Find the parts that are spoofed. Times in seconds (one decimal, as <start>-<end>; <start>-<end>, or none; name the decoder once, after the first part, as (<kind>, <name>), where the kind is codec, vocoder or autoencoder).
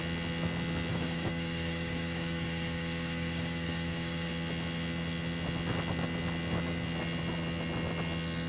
0.9-4.3 (codec, DAC)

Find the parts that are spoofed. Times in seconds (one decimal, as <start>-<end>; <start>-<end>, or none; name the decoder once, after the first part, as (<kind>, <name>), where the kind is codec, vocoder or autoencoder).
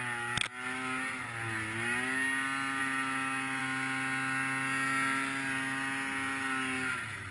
none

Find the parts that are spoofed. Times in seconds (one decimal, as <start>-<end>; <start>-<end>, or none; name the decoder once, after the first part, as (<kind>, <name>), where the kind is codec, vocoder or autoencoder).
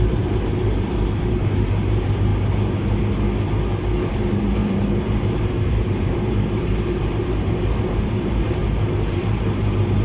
0.0-2.3 (vocoder, BigVGAN v2); 4.1-8.6; 9.1-10.0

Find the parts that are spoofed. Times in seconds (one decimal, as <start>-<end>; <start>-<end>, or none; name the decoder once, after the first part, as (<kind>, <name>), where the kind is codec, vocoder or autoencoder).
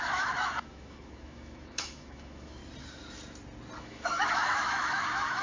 0.0-2.6 (autoencoder, DAC-VAE); 3.8-5.4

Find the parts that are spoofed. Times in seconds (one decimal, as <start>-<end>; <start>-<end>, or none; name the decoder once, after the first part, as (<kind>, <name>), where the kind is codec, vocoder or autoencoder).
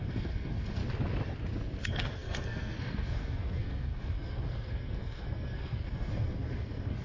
0.0-0.8 (codec, SNAC); 1.8-7.0